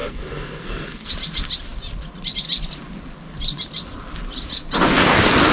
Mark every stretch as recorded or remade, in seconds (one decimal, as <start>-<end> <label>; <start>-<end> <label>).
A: 0.0-1.1 remade; 1.1-5.5 recorded